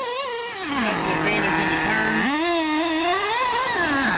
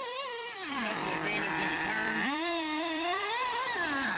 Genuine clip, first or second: first